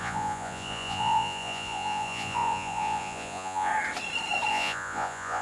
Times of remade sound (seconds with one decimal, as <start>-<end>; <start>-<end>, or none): 0.0-3.7; 4.5-5.4